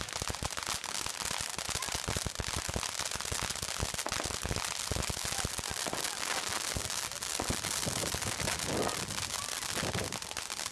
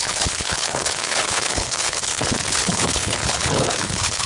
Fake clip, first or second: second